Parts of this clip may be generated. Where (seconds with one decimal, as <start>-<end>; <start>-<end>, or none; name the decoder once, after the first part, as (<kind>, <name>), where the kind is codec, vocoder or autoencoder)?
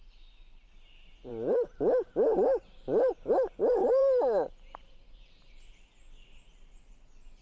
1.3-3.1 (vocoder, BigVGAN v2); 3.6-5.0